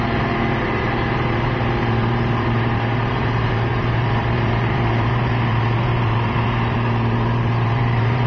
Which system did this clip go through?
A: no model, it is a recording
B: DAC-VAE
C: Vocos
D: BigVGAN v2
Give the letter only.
D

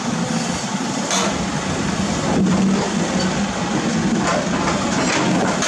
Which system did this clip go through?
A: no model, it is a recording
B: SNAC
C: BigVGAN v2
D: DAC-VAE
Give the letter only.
A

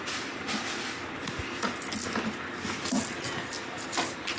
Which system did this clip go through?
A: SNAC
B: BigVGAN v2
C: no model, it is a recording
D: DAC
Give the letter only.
C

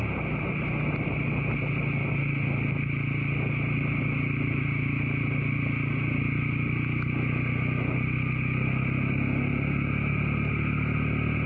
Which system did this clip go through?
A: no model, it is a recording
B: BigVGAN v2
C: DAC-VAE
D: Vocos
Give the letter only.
A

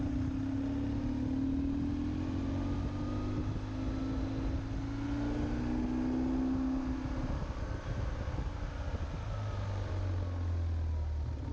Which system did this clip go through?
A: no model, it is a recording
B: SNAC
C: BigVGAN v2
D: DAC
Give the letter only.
A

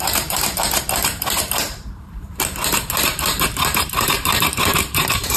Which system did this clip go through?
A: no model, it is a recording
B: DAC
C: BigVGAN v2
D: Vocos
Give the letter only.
C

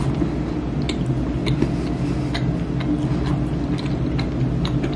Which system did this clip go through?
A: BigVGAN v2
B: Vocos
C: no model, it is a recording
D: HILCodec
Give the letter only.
C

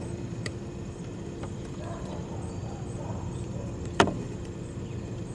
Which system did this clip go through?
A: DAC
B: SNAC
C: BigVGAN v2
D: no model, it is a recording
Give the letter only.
C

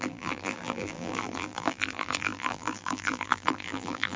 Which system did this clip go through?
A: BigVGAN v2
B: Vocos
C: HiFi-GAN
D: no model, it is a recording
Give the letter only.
A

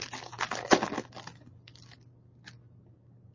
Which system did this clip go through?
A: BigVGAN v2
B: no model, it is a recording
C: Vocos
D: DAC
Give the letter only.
B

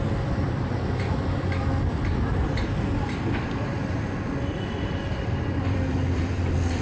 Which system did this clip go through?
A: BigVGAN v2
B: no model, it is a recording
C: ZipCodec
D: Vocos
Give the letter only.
A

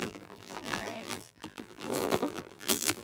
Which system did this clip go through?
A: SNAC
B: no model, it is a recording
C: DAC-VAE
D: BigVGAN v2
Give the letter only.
D